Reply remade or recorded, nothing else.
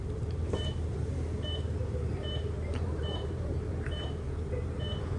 remade